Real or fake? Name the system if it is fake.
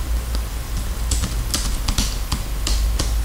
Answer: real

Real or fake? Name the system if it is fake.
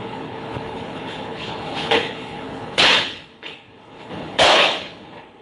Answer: fake, codec, HILCodec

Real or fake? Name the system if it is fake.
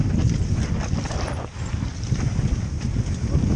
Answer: real